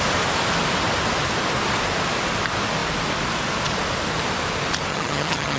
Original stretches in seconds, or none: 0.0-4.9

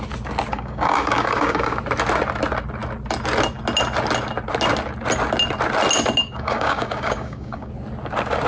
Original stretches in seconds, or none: 0.0-0.5; 1.8-6.2; 7.7-8.5

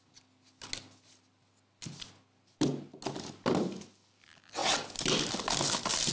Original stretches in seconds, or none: 0.0-6.1

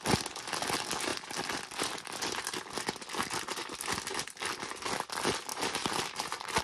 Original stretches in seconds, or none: 0.0-5.5

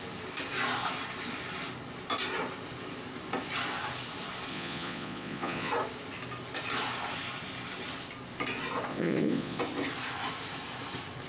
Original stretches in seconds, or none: 0.0-4.5; 5.7-8.9; 9.6-11.3